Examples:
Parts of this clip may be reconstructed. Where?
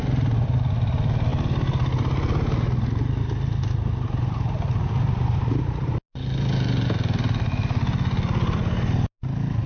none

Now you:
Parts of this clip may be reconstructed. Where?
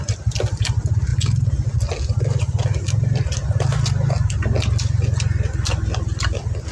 none